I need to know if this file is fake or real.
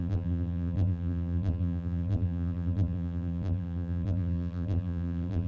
fake